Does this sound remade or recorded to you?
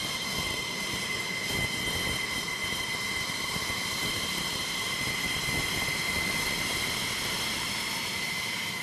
recorded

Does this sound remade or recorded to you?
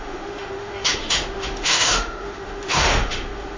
remade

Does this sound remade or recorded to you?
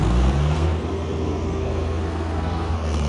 remade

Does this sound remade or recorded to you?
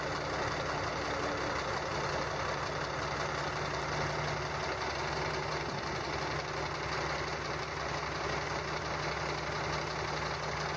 recorded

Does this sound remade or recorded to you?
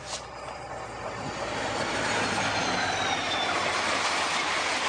recorded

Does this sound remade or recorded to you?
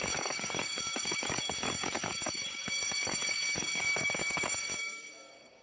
remade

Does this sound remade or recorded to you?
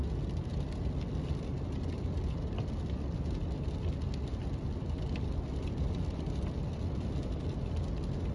recorded